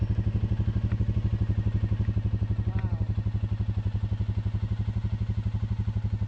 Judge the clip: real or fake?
real